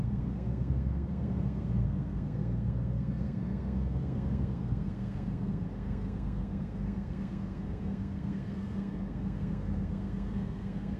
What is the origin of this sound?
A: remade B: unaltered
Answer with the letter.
A